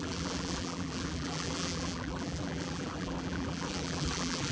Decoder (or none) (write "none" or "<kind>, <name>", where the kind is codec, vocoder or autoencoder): vocoder, BigVGAN v2